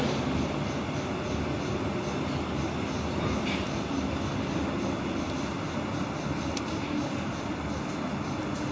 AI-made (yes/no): no